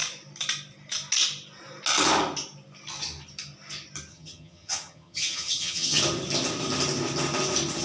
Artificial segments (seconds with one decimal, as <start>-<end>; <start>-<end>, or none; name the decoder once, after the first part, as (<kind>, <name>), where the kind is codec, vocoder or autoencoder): 4.1-6.0 (vocoder, HiFi-GAN)

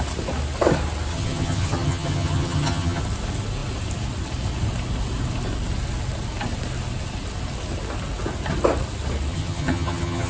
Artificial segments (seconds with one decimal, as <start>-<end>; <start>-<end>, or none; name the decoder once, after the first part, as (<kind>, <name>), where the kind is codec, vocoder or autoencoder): 1.1-3.0 (vocoder, HiFi-GAN); 9.3-10.3

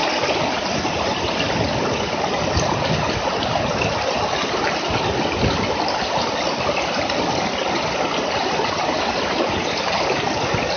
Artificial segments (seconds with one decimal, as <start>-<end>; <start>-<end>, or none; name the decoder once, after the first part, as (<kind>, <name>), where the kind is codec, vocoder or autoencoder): none

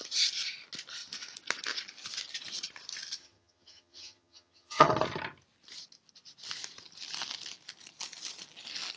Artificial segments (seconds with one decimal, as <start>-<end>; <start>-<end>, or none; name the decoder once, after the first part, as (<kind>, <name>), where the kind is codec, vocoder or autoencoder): 3.2-4.9 (vocoder, HiFi-GAN)

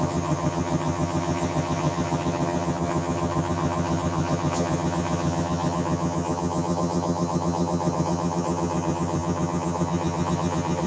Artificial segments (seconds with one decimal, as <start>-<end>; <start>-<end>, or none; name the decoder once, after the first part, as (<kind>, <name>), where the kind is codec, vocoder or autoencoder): 0.0-10.9 (vocoder, HiFi-GAN)

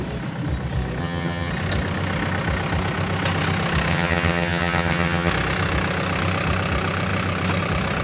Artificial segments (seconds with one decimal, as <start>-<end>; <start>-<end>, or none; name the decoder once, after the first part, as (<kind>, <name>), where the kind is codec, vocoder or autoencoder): 1.0-1.5 (vocoder, HiFi-GAN); 3.9-5.3